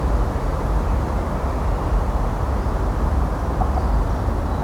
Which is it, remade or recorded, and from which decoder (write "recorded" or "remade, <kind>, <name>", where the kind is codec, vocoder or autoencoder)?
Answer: recorded